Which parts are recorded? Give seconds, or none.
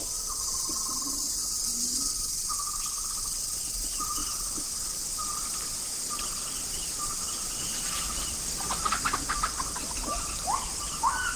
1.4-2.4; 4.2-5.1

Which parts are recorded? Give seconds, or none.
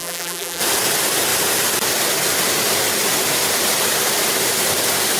0.6-5.2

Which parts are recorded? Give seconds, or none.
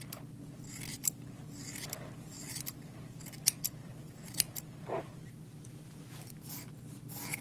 0.0-0.9; 3.2-3.8; 6.3-7.4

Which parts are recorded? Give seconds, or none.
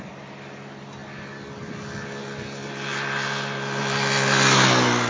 0.0-5.1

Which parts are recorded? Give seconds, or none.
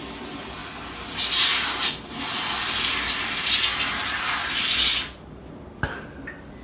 0.0-0.6; 2.9-4.9; 5.5-6.6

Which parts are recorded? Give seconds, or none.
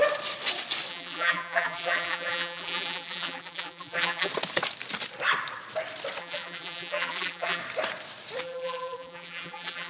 0.0-0.9; 4.3-6.2; 7.6-8.4